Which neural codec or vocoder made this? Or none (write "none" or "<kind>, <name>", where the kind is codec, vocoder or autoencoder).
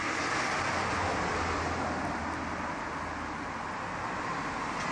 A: none